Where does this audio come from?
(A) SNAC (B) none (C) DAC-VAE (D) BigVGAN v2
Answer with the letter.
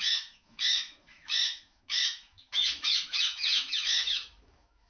C